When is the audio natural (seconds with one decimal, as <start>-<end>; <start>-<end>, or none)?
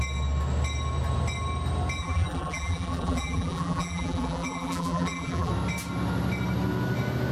0.0-2.0; 5.5-7.3